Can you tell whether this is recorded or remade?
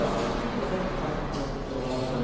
recorded